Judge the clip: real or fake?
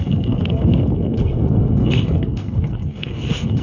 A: fake